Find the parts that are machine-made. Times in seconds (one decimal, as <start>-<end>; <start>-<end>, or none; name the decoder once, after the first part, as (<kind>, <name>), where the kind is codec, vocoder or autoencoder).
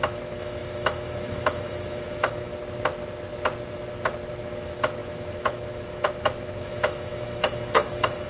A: 0.0-2.5 (autoencoder, DAC-VAE); 4.4-8.3